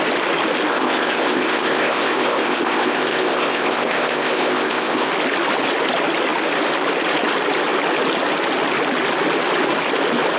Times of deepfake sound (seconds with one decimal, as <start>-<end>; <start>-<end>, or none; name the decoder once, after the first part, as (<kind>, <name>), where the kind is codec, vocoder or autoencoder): 0.7-5.1 (codec, ZipCodec)